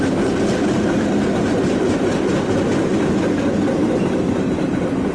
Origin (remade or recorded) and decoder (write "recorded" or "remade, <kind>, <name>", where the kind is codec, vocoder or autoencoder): recorded